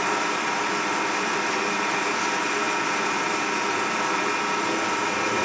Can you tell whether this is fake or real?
real